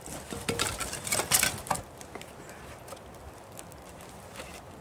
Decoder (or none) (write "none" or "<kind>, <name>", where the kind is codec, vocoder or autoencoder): none